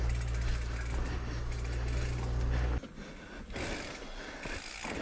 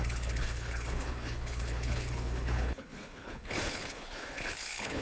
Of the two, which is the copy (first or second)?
second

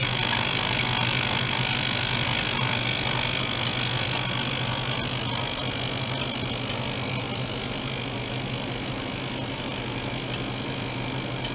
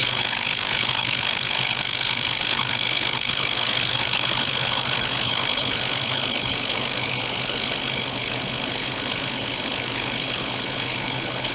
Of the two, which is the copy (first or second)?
second